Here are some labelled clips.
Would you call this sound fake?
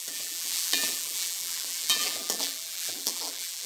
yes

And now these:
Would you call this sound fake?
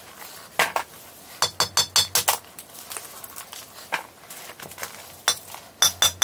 no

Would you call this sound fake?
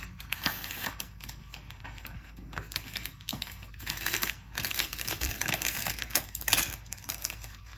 yes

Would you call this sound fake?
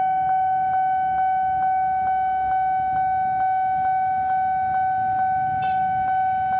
no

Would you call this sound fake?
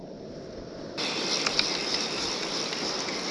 no